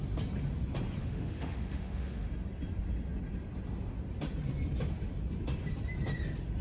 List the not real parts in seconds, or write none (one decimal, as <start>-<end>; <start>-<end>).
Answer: 1.0-2.3